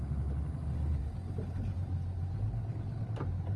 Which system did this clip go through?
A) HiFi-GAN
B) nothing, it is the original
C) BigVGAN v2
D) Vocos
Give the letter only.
B